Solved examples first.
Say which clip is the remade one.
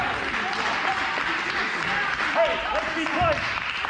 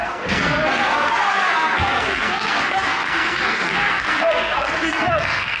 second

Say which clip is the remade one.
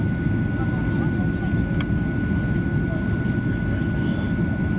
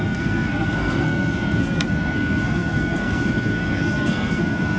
second